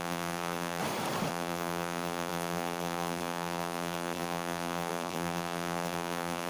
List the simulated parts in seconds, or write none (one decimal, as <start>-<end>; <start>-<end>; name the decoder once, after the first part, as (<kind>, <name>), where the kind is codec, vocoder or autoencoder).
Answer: 0.0-0.8 (vocoder, BigVGAN v2); 1.3-6.5